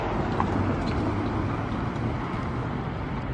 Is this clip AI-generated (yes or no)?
no